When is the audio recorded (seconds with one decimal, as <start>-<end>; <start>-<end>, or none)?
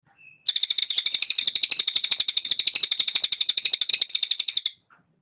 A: 0.0-5.2